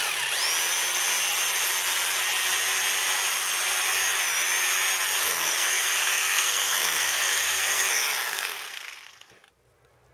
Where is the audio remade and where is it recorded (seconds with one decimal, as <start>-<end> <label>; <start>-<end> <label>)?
0.0-5.2 recorded; 5.2-9.3 remade; 9.3-10.1 recorded